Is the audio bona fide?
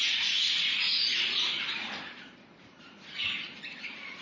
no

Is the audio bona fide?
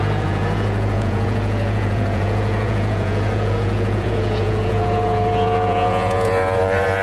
no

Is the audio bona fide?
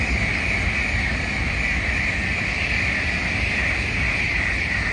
yes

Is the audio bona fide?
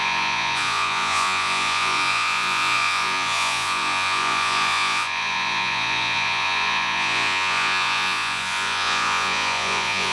no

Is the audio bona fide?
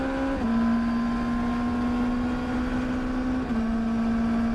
yes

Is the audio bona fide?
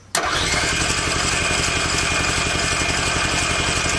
yes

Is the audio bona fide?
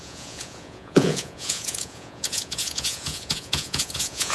no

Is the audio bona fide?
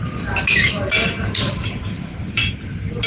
yes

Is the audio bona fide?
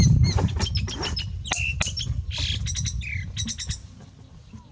yes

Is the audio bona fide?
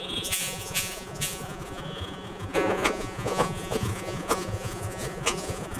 no